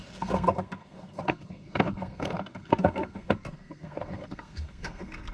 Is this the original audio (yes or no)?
no